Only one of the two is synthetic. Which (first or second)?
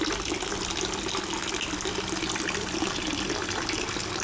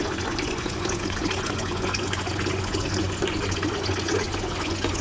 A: second